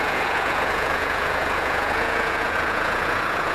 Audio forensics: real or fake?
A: fake